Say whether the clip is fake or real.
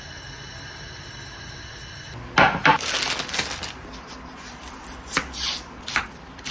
real